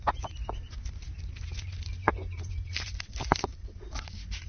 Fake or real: real